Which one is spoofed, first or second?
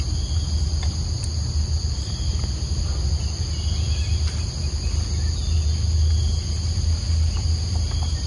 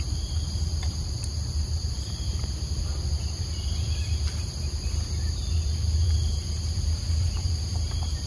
second